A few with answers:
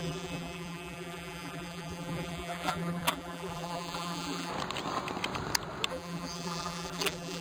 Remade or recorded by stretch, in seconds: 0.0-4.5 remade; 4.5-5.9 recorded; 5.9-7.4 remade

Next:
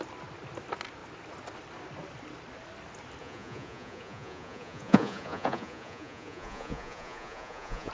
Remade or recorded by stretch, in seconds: 0.0-3.2 recorded; 3.2-7.9 remade

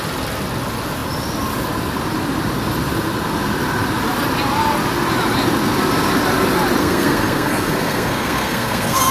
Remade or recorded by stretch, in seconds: 0.0-6.8 recorded; 6.8-9.1 remade

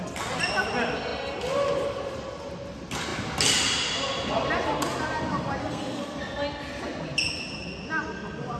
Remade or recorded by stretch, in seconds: 0.0-5.6 recorded; 5.6-6.2 remade; 6.2-8.6 recorded

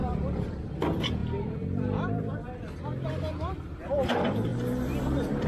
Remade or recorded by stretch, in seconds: 0.0-0.7 remade; 0.7-1.2 recorded; 1.2-2.8 remade; 2.8-4.5 recorded; 4.5-5.5 remade

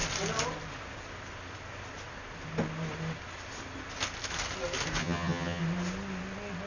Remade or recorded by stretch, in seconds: 0.0-5.0 recorded; 5.0-5.6 remade; 5.6-6.7 recorded